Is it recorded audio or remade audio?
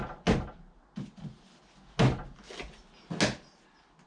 recorded